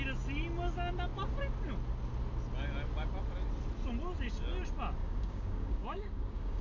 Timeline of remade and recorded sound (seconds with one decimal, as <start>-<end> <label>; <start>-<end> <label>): 0.0-5.0 recorded; 5.0-6.6 remade